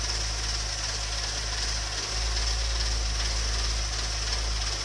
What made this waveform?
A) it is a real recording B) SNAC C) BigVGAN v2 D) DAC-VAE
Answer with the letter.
A